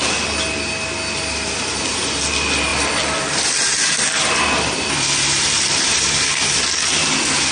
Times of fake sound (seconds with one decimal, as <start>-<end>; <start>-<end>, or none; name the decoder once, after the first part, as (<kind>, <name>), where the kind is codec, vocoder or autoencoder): 2.7-6.8 (vocoder, BigVGAN v2)